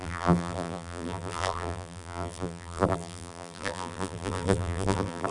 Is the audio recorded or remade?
remade